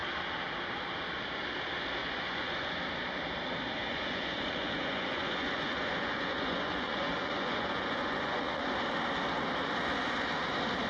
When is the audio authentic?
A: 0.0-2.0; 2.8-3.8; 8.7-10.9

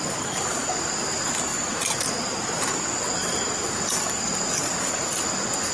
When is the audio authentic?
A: 0.0-5.7

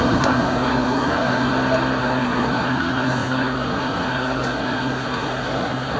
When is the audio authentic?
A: 1.5-2.0

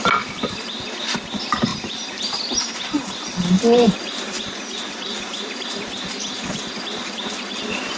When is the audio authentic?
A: 0.0-8.0

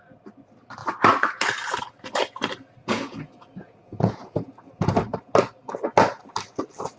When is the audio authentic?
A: 0.0-2.8; 4.9-7.0